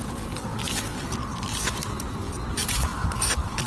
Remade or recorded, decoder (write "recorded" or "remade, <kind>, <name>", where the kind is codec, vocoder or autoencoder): remade, vocoder, BigVGAN v2